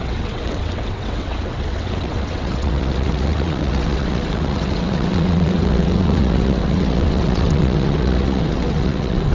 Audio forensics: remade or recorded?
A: remade